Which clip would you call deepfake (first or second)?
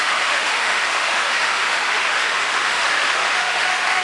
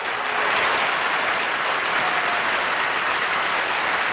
first